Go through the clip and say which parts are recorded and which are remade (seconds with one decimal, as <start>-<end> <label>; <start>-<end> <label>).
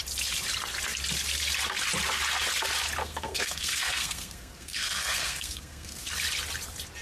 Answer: 0.0-3.0 recorded; 3.0-6.1 remade; 6.1-7.0 recorded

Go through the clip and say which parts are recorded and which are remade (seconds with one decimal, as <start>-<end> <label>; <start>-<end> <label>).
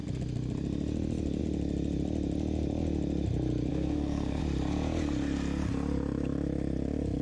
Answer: 0.0-3.7 recorded; 3.7-4.4 remade; 4.4-7.2 recorded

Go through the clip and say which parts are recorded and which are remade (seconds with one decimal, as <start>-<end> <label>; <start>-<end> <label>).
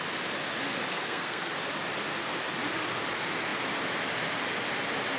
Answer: 0.0-0.9 recorded; 0.9-1.5 remade; 1.5-5.2 recorded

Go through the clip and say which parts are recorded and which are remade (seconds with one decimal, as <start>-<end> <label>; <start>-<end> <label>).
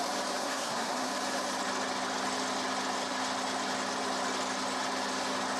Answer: 0.0-0.4 recorded; 0.4-1.1 remade; 1.1-5.6 recorded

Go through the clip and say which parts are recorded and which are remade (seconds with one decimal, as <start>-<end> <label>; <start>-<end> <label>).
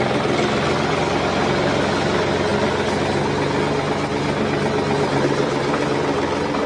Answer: 0.0-6.7 recorded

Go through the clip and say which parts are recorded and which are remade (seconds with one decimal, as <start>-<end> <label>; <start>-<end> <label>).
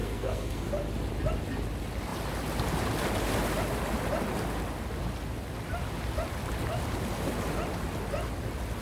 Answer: 0.0-0.7 remade; 0.7-8.8 recorded